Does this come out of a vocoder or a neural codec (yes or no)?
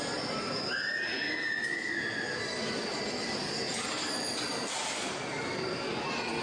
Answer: no